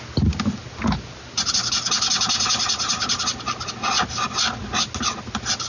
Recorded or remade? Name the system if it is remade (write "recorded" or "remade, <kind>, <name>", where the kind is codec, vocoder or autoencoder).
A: recorded